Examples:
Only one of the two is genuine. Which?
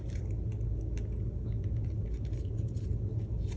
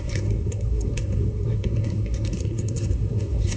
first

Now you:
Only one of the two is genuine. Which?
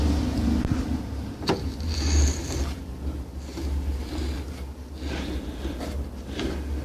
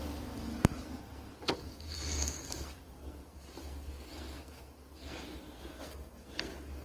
first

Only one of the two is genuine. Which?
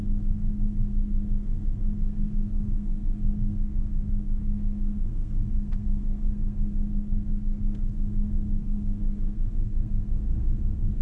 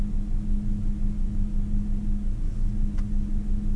second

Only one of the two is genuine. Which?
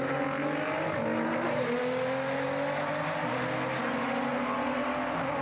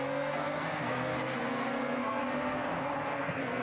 first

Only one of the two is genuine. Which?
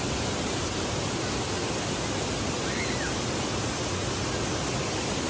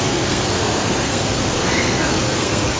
first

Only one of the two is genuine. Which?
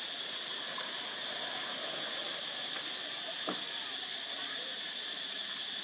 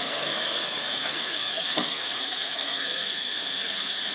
first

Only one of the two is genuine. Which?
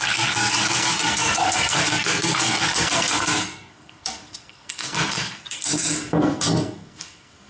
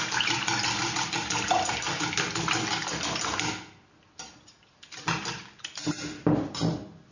second